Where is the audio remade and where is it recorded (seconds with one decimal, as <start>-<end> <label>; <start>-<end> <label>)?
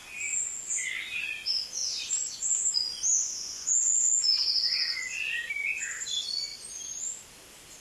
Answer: 0.0-0.7 remade; 0.7-1.8 recorded; 1.8-5.5 remade; 5.5-7.8 recorded